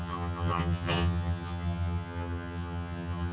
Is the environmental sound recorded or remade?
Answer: remade